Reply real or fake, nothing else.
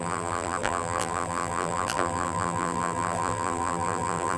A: fake